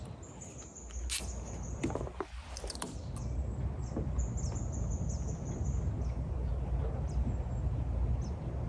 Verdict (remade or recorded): recorded